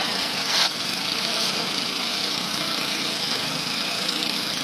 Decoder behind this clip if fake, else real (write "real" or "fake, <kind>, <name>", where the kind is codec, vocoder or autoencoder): fake, codec, SNAC